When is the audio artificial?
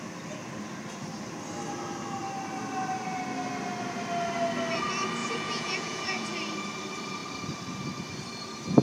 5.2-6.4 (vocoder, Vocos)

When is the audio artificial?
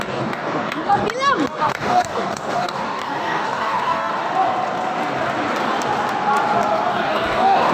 0.0-1.0 (codec, DAC); 1.6-4.1; 6.9-7.7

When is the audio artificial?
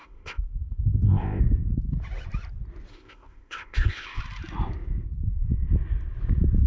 0.0-1.4 (codec, ZipCodec); 2.9-4.2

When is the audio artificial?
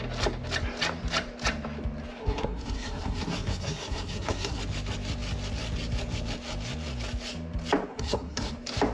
2.2-4.6 (codec, SNAC); 7.9-8.5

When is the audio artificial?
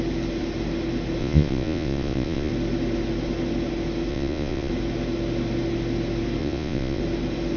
1.2-2.5 (vocoder, Vocos); 4.1-4.7; 6.4-7.0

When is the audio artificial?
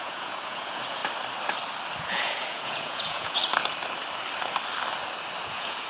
0.0-1.0 (vocoder, Vocos); 2.0-3.4; 5.4-5.9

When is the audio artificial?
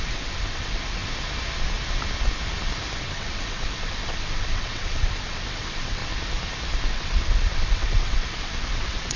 0.0-1.0 (vocoder, WaveNeXt); 3.0-6.0; 6.9-9.2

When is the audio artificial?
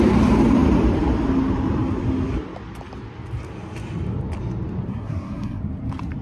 4.9-5.6 (codec, SNAC)